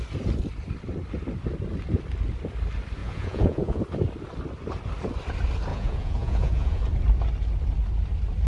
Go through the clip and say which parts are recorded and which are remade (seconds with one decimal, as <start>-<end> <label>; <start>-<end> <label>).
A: 0.0-3.0 recorded; 3.0-3.8 remade; 3.8-5.7 recorded; 5.7-6.8 remade; 6.8-8.5 recorded